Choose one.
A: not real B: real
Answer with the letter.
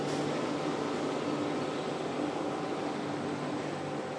B